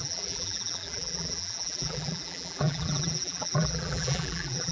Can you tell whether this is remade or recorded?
remade